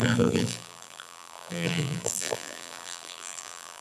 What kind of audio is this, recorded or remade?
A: remade